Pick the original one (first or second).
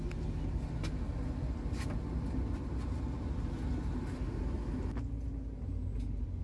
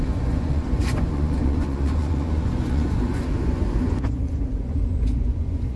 first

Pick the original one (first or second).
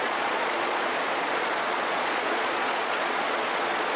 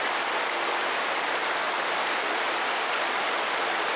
second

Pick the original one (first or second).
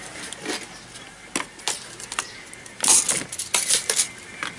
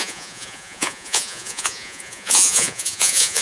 first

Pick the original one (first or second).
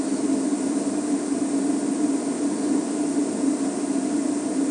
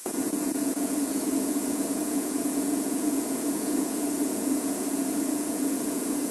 first